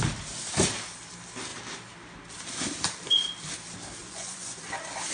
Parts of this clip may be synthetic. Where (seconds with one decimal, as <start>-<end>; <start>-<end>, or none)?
4.0-4.6